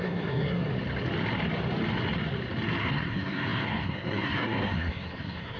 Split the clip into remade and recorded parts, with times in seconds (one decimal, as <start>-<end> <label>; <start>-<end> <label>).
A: 0.0-0.7 remade; 0.7-2.8 recorded; 2.8-5.6 remade